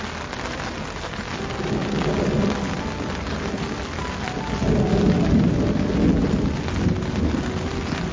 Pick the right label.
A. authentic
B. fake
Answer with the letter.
A